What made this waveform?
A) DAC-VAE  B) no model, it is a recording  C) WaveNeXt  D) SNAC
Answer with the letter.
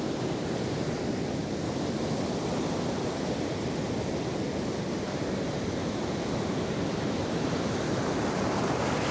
B